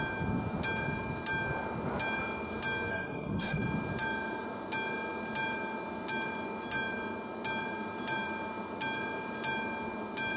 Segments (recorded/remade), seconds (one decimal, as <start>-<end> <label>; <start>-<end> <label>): 0.0-2.9 recorded; 2.9-3.6 remade; 3.6-10.4 recorded